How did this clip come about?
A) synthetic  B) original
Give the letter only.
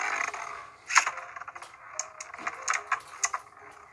B